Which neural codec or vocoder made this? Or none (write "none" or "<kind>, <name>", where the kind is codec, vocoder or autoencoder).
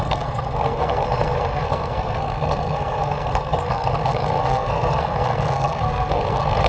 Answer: codec, SNAC